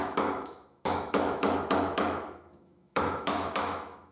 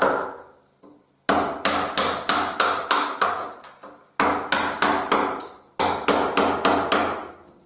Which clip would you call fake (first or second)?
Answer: first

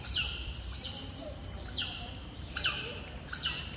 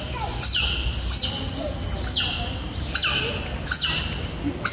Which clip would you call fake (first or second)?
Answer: first